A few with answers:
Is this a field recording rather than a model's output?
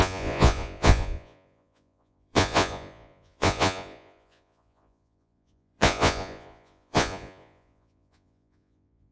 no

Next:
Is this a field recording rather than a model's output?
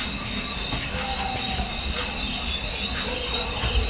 yes